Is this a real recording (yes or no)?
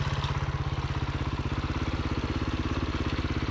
yes